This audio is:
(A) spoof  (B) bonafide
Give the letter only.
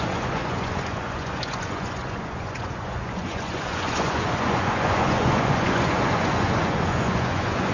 A